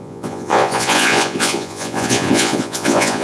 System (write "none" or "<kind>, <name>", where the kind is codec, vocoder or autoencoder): vocoder, Vocos